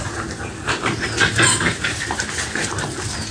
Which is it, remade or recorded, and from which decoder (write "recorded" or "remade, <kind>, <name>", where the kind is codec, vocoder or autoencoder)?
recorded